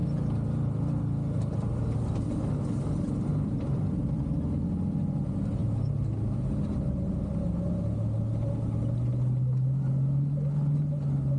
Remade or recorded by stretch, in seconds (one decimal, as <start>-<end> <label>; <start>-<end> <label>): 0.0-3.3 recorded; 3.3-3.9 remade; 3.9-11.4 recorded